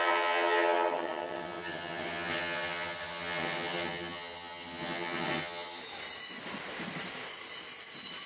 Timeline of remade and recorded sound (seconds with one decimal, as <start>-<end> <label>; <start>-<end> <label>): 0.0-5.8 remade; 5.8-8.3 recorded